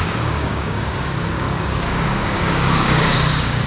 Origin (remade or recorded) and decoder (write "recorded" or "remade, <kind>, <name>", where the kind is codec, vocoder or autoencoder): remade, codec, DAC